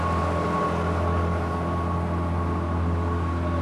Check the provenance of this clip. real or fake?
real